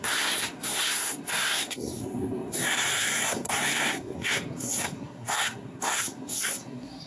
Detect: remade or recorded remade